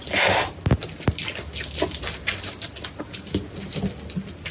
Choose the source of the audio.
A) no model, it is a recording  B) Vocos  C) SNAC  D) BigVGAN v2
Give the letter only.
A